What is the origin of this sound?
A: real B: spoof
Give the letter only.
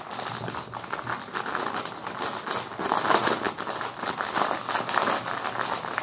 A